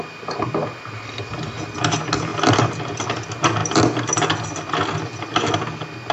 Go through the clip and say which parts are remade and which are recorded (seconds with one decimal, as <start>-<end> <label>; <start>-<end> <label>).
0.0-6.1 recorded